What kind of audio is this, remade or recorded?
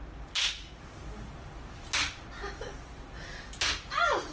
recorded